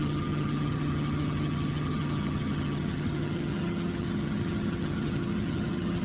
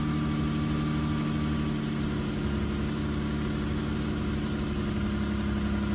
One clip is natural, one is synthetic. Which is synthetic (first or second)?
first